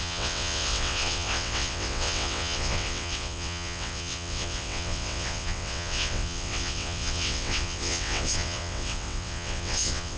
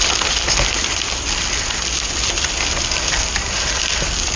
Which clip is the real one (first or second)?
second